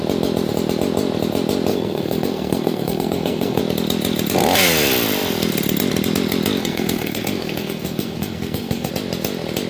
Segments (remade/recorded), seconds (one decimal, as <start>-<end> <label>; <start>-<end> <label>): 0.0-1.7 recorded; 1.7-3.6 remade; 3.6-6.6 recorded; 6.6-8.9 remade; 8.9-9.7 recorded